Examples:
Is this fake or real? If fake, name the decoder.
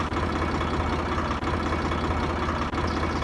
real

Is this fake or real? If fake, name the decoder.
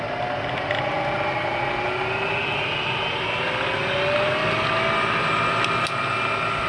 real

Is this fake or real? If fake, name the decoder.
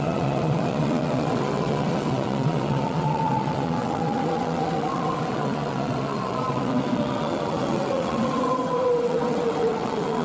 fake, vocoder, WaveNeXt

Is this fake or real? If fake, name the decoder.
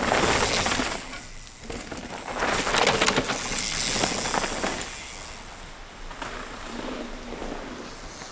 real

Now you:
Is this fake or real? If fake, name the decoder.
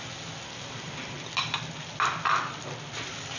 real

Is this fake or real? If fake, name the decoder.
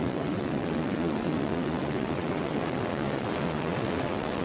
fake, vocoder, WaveNeXt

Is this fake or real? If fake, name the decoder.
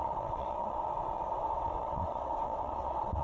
fake, vocoder, WaveNeXt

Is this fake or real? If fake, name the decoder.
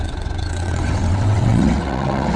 fake, vocoder, WaveNeXt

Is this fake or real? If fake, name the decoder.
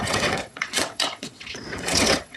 fake, vocoder, WaveNeXt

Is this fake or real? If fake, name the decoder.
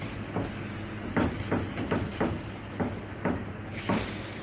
real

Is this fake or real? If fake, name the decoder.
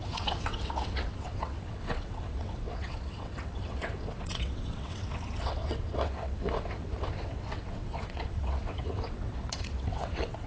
fake, vocoder, WaveNeXt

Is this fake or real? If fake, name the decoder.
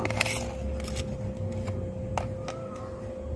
real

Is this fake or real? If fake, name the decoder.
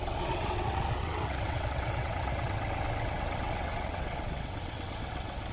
fake, vocoder, WaveNeXt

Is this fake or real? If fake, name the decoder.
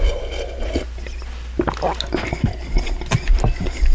real